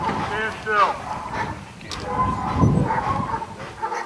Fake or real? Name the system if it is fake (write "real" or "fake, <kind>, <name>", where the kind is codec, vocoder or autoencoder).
real